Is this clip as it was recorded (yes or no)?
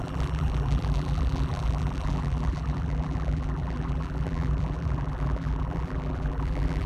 no